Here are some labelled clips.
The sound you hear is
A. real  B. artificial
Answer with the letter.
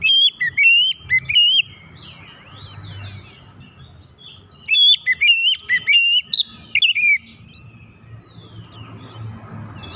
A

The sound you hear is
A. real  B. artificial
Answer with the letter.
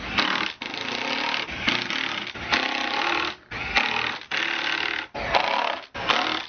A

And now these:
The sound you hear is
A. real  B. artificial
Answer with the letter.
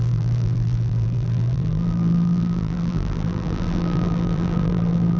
B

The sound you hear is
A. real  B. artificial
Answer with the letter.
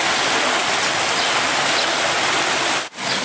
A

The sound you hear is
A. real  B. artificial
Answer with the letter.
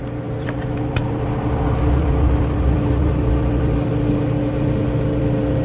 A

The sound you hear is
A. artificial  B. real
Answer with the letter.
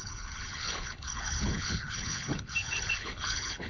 A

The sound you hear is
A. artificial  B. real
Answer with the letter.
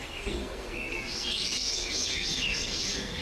A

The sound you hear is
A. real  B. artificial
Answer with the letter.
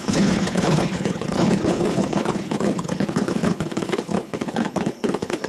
B